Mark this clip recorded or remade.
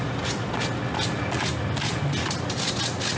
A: recorded